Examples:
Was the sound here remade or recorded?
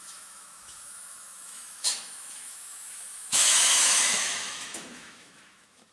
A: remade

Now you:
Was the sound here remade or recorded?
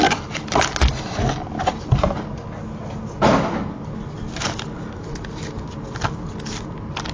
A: recorded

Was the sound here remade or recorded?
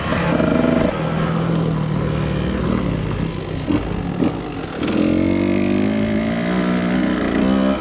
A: recorded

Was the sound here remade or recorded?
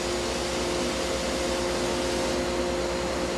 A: recorded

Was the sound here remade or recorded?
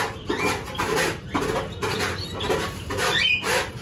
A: recorded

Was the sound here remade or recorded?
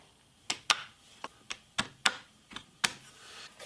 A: recorded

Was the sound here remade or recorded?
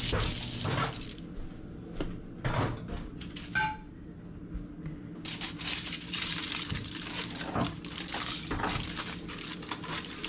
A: recorded